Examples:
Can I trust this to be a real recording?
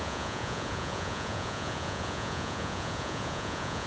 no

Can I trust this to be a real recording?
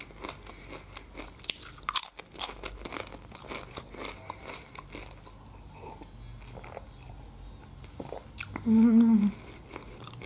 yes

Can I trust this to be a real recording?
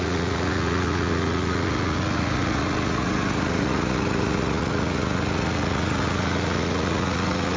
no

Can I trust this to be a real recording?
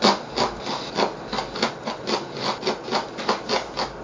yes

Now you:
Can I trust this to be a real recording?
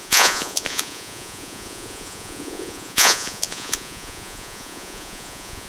no